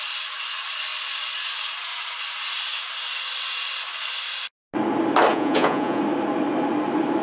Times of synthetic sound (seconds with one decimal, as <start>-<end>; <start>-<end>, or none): 5.3-6.0